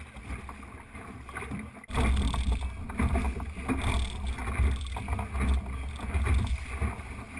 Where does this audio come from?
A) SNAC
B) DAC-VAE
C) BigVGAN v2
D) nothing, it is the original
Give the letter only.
D